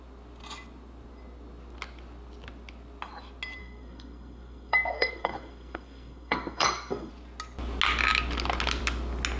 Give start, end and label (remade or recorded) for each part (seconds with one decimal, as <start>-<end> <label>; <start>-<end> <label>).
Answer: 0.0-3.6 recorded; 3.6-7.1 remade; 7.1-9.4 recorded